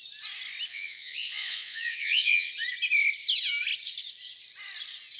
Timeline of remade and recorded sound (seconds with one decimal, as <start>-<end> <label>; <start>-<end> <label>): 0.0-0.7 recorded; 0.7-2.5 remade; 2.5-5.2 recorded